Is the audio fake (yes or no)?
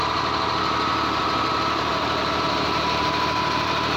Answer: no